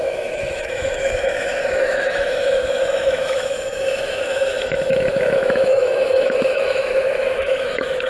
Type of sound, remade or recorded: remade